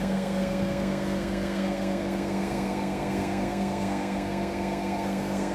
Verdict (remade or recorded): remade